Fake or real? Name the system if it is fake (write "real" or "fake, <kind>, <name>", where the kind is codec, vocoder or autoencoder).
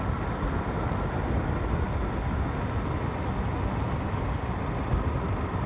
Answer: real